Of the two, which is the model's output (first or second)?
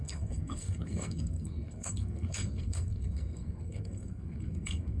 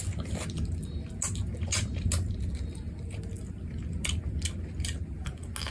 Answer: first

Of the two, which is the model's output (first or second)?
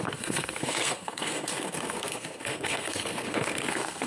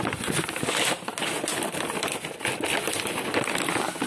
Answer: first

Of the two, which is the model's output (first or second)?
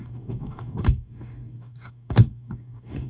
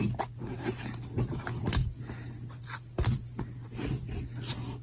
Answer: first